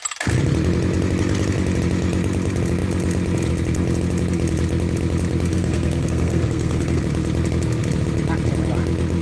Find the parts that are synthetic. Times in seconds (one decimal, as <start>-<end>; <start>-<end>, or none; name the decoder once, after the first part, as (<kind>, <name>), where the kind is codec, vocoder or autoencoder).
5.5-7.0 (codec, SNAC)